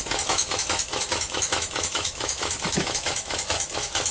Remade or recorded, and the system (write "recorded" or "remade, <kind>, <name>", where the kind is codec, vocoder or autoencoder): remade, autoencoder, DAC-VAE